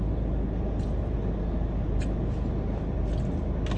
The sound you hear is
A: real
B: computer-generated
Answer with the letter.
A